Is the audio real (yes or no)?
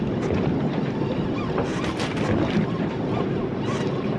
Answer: no